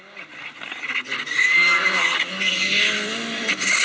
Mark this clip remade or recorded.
recorded